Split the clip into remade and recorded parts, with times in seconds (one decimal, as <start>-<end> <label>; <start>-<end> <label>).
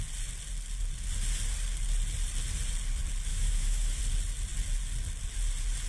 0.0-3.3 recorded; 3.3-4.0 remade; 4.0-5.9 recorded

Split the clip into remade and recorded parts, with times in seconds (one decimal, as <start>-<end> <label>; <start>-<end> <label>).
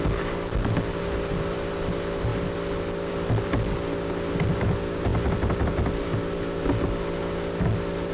0.0-8.1 recorded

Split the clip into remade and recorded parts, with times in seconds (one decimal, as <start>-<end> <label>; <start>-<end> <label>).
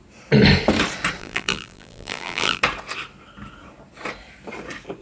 0.0-1.2 recorded; 1.2-2.6 remade; 2.6-5.0 recorded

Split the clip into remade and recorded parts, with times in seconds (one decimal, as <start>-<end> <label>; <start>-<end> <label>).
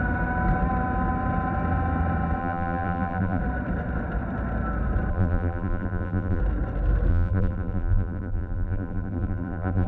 0.0-2.4 recorded; 2.4-3.4 remade; 3.4-5.1 recorded; 5.1-6.4 remade; 6.4-7.1 recorded; 7.1-9.9 remade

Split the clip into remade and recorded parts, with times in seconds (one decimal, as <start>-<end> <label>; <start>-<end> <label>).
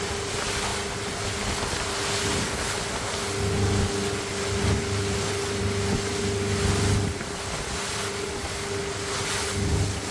0.0-10.1 recorded